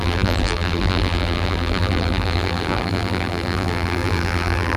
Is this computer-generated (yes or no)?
yes